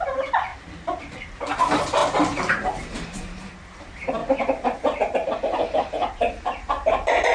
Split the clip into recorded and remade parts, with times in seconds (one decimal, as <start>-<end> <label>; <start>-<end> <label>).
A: 0.0-0.5 recorded; 0.5-1.0 remade; 1.0-2.0 recorded; 2.0-3.8 remade; 3.8-4.2 recorded; 4.2-6.4 remade; 6.4-7.3 recorded